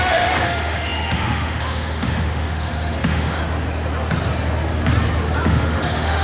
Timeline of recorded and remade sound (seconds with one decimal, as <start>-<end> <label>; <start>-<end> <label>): 0.0-3.4 remade; 3.4-5.5 recorded; 5.5-6.2 remade